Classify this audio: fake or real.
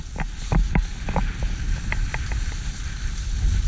real